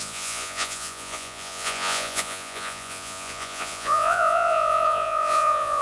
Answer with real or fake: fake